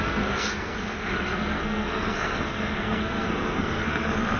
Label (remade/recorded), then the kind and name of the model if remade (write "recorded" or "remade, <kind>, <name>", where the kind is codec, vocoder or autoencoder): remade, codec, SNAC